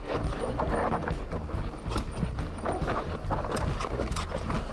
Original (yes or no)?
yes